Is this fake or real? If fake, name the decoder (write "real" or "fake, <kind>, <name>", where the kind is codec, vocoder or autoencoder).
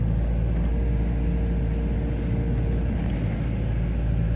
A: real